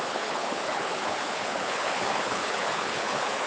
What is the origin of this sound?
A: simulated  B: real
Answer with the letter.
A